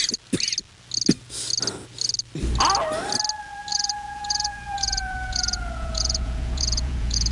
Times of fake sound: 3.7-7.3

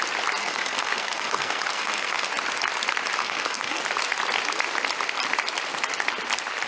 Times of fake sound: 0.4-2.3; 3.2-3.8

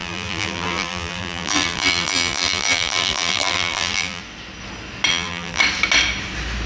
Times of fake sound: 0.0-4.2; 5.1-5.6

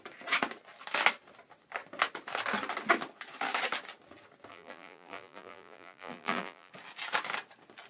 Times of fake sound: 4.5-6.7

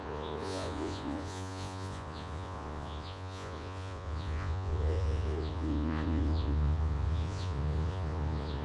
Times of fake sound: 0.0-8.6

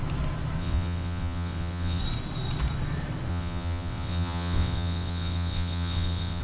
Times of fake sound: 0.6-2.0; 3.3-6.4

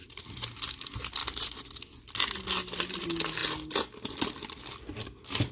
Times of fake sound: none